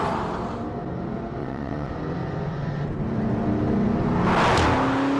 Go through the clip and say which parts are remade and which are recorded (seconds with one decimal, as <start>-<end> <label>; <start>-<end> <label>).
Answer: 0.0-1.4 recorded; 1.4-1.9 remade; 1.9-5.2 recorded